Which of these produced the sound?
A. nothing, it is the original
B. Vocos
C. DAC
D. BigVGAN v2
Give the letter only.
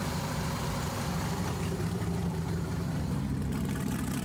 D